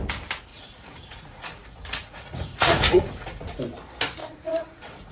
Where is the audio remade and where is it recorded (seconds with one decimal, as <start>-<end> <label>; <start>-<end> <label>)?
0.0-0.5 recorded; 0.5-3.6 remade; 3.6-4.2 recorded; 4.2-5.1 remade

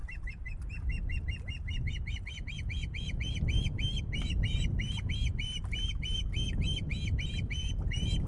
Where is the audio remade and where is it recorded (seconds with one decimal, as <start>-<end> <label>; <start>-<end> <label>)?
0.0-8.3 recorded